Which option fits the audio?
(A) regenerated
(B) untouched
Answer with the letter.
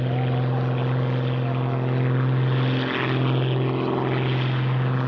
B